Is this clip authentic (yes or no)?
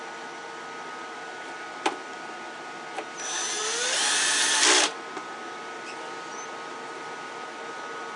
yes